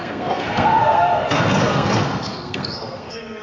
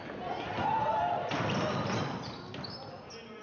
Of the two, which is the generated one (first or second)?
first